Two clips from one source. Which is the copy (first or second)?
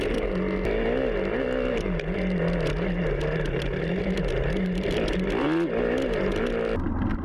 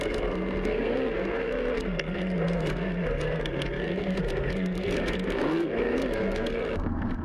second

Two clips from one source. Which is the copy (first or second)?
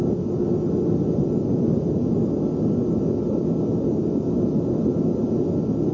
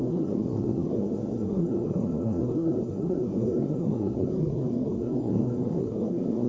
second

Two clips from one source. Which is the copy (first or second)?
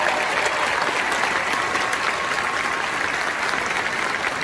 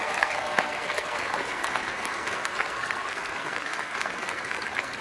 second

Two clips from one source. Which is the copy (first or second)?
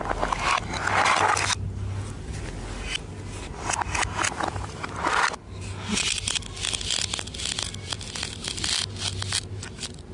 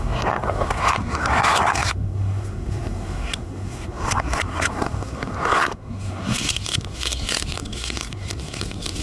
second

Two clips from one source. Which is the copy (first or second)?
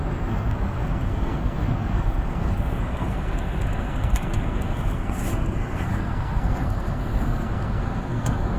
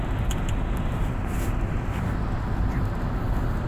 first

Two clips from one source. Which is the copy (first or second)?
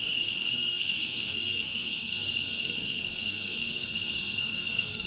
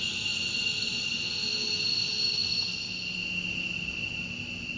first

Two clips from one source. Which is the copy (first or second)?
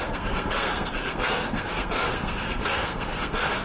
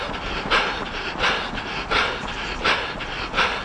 first